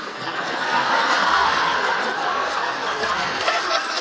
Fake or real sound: fake